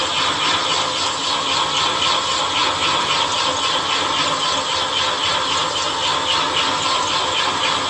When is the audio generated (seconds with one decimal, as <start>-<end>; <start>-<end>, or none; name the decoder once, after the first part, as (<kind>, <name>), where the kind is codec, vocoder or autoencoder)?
none